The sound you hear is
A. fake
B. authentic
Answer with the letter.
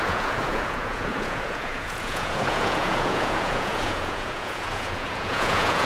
A